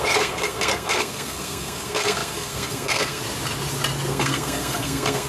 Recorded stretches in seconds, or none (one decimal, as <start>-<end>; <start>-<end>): 3.2-4.1